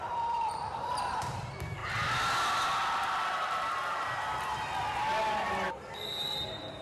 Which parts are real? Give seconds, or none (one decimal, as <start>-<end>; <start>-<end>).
1.8-5.7